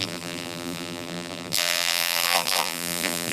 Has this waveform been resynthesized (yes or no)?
yes